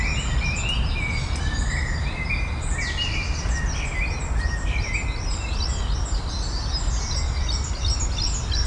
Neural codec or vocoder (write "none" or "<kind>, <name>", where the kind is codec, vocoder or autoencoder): none